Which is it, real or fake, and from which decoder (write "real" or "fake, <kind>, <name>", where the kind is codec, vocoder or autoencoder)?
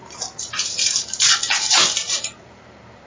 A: fake, vocoder, BigVGAN v2